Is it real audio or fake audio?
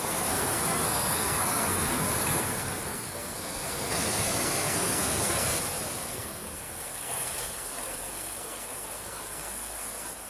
fake